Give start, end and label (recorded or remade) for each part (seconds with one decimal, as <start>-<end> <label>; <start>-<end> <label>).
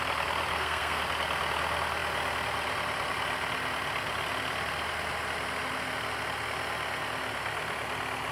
0.0-0.5 recorded; 0.5-1.0 remade; 1.0-8.3 recorded